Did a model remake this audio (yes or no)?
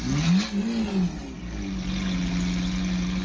no